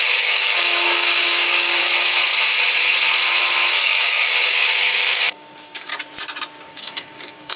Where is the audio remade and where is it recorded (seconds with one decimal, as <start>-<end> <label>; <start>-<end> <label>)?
0.0-1.8 remade; 1.8-3.7 recorded; 3.7-5.9 remade; 5.9-6.7 recorded; 6.7-7.6 remade